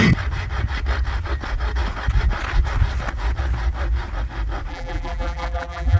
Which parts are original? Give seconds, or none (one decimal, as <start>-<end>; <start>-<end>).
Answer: 0.0-4.7

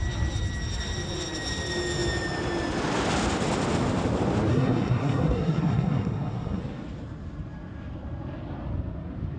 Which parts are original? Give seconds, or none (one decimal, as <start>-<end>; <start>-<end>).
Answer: 0.0-4.5; 6.6-9.4

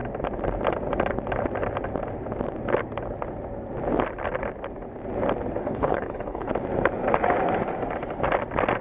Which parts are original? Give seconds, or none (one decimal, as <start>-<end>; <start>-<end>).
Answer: 0.0-5.6; 6.5-8.8